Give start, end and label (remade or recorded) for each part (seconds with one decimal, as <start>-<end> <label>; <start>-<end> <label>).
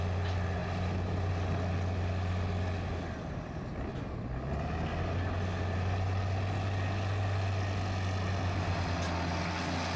0.0-0.6 recorded; 0.6-1.1 remade; 1.1-10.0 recorded